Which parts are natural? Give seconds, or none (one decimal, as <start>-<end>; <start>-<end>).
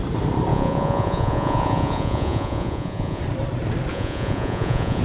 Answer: 0.0-0.5; 3.2-3.9